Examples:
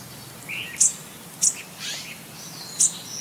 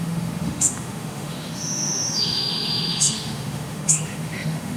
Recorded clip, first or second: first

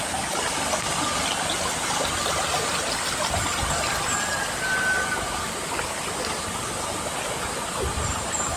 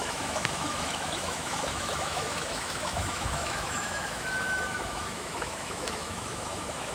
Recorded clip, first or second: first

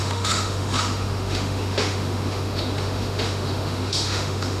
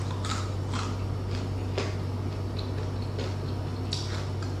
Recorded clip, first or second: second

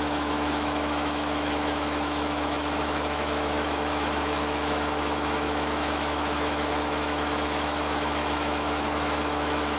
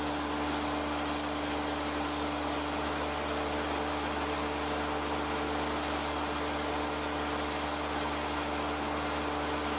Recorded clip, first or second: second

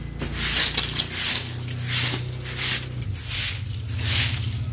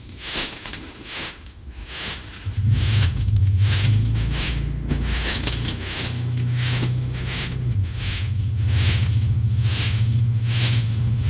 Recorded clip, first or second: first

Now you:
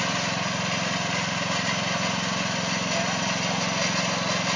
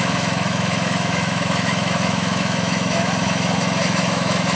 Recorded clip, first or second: first